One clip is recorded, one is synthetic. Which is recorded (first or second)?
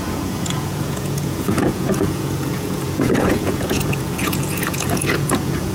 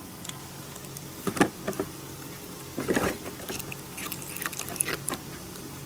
second